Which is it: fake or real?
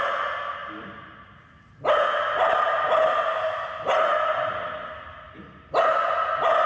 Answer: real